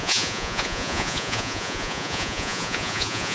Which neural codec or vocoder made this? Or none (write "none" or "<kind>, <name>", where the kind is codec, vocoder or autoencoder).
vocoder, Vocos